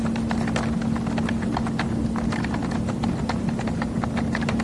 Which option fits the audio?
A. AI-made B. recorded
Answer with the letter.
B